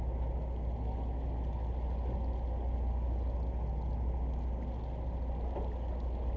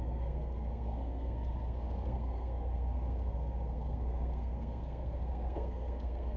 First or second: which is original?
first